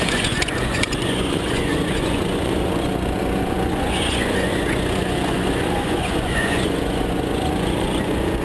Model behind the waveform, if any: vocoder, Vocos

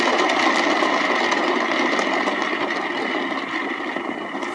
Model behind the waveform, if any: none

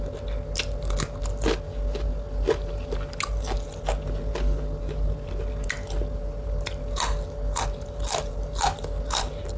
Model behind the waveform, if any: none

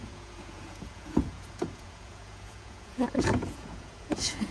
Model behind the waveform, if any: vocoder, Vocos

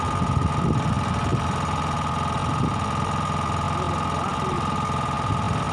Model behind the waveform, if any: none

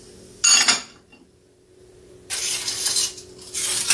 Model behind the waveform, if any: none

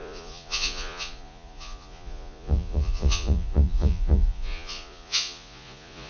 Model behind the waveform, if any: vocoder, Vocos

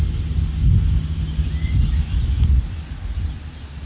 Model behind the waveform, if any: none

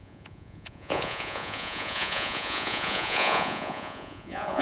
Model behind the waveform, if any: vocoder, Vocos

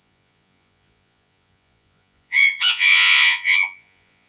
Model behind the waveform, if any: vocoder, Vocos